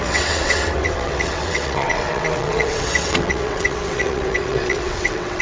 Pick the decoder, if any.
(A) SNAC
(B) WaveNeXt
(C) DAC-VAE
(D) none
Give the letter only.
B